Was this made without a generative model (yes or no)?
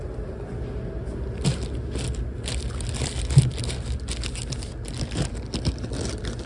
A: yes